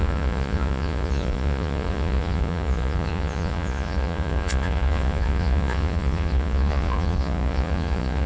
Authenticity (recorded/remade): remade